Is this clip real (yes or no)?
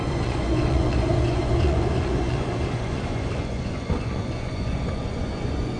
no